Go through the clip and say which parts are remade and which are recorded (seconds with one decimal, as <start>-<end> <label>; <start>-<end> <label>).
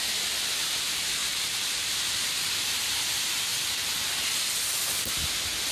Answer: 0.0-1.2 recorded; 1.2-3.0 remade; 3.0-5.7 recorded